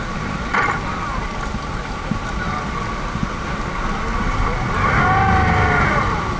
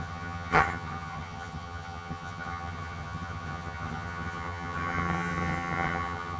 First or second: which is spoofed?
second